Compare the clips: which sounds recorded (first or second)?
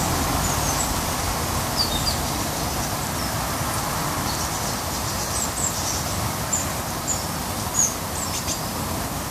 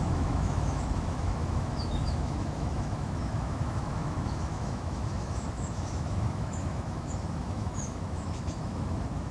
first